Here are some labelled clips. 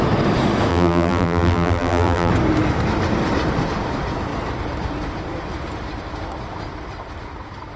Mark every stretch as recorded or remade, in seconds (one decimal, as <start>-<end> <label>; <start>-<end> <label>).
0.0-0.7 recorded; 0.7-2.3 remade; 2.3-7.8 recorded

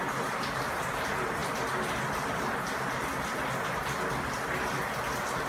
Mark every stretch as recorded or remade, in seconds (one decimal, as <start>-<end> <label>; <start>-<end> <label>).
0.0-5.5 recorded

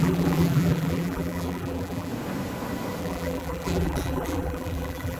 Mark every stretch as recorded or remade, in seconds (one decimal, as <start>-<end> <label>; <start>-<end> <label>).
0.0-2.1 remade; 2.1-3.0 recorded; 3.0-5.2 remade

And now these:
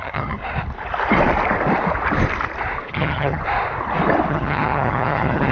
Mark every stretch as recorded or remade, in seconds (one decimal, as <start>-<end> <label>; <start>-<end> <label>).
0.0-0.4 remade; 0.4-2.9 recorded; 2.9-3.4 remade; 3.4-4.3 recorded; 4.3-5.5 remade